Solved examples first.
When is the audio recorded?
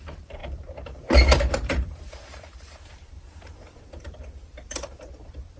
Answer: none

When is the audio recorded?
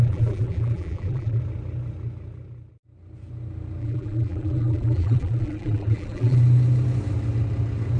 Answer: 1.4-3.8; 6.4-8.0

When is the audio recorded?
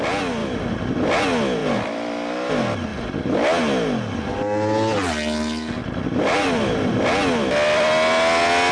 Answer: 0.0-1.6; 2.3-5.8; 7.0-8.7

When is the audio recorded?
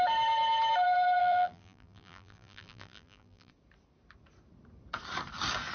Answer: 0.0-1.2; 3.5-5.7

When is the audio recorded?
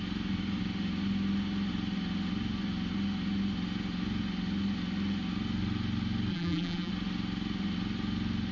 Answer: 0.0-6.3; 6.9-8.5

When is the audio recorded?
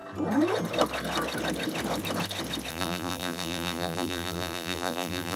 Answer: 0.0-2.7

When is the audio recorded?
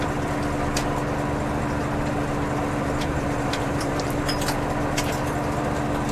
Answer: 0.0-2.6; 4.2-6.1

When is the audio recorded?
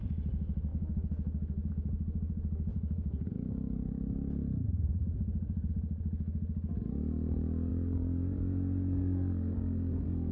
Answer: 0.0-2.7; 5.7-7.7